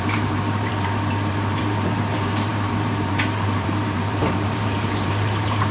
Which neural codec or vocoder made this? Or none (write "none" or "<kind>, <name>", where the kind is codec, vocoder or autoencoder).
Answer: vocoder, BigVGAN v2